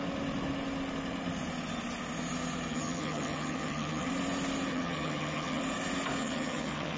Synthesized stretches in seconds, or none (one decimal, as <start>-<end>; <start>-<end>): 2.7-4.1; 4.7-5.6; 6.2-7.0